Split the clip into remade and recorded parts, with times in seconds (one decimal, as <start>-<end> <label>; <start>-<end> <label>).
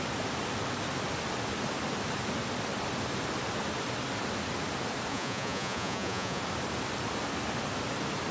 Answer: 0.0-5.1 recorded; 5.1-6.4 remade; 6.4-8.3 recorded